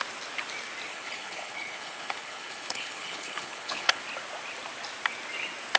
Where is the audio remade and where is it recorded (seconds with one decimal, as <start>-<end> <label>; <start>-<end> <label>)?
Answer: 0.0-0.9 recorded; 0.9-4.0 remade; 4.0-5.8 recorded